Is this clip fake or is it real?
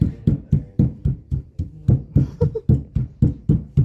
fake